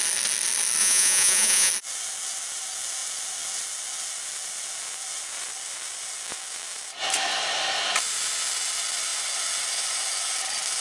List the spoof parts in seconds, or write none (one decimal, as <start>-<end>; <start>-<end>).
0.8-1.7